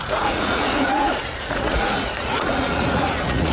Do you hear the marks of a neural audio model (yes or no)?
yes